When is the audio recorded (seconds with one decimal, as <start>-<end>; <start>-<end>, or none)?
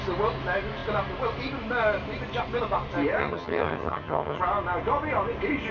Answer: 0.0-3.2; 4.4-5.7